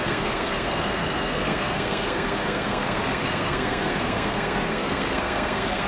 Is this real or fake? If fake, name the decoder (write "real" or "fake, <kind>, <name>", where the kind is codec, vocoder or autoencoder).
fake, codec, SNAC